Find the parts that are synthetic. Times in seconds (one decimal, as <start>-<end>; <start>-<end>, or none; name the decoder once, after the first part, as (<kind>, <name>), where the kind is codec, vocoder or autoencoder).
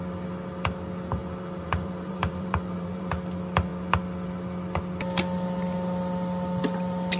1.2-3.1 (vocoder, BigVGAN v2)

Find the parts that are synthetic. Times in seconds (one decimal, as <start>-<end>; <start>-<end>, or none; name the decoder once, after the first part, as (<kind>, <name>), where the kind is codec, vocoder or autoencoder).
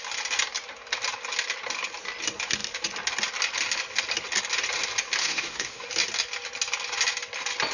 5.2-5.9 (autoencoder, DAC-VAE)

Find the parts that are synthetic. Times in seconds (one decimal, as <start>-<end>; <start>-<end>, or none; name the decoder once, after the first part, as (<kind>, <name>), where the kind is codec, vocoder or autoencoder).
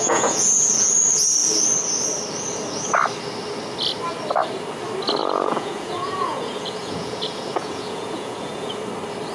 0.0-0.9 (vocoder, Vocos); 5.2-8.8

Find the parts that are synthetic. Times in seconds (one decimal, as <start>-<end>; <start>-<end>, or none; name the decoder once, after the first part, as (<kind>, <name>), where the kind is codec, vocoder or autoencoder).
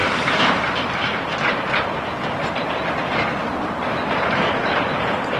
0.0-1.5 (vocoder, BigVGAN v2); 3.4-5.4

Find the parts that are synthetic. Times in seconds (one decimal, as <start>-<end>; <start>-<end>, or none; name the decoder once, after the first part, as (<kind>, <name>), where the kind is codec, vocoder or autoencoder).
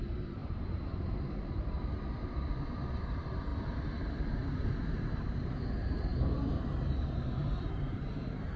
0.0-1.8 (vocoder, BigVGAN v2); 2.9-3.5; 4.3-8.6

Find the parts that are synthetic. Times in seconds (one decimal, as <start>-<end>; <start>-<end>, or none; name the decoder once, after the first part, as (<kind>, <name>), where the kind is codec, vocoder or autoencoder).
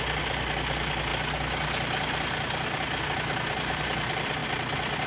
none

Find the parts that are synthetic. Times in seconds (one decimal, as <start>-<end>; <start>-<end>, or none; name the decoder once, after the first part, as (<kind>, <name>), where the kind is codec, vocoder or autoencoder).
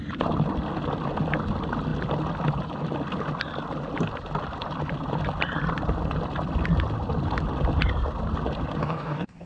8.8-9.5 (codec, DAC)